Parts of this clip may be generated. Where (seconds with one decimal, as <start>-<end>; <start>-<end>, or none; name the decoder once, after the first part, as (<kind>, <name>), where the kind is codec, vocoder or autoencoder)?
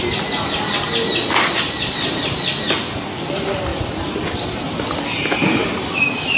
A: none